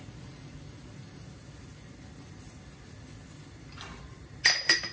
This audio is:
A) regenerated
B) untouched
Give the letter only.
B